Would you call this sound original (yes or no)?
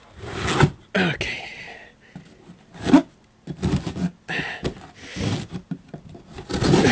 yes